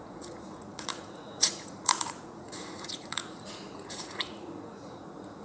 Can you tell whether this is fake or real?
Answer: fake